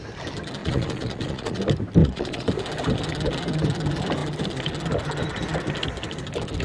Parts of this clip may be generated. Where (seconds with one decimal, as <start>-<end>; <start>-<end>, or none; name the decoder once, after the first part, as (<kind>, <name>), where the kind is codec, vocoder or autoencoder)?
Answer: 0.6-1.6 (vocoder, Vocos); 2.0-2.5